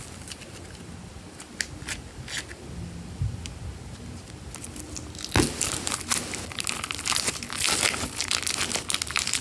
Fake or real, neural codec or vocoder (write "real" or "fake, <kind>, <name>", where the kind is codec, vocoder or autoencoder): real